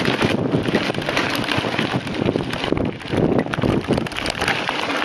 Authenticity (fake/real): fake